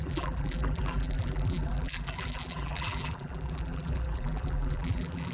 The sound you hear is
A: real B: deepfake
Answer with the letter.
B